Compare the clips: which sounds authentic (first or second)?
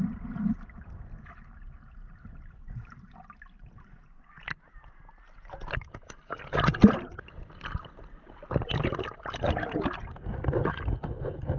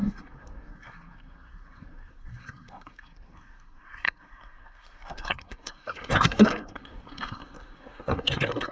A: first